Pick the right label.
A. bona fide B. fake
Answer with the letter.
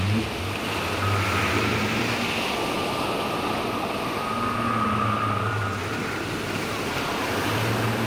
A